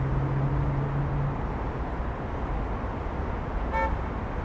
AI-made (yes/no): no